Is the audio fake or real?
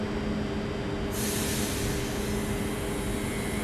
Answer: real